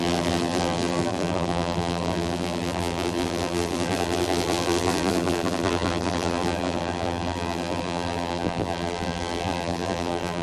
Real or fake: fake